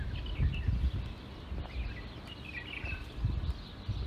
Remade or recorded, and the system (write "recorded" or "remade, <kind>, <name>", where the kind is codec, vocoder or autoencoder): recorded